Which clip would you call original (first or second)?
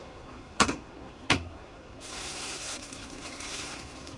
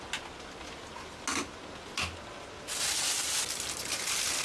second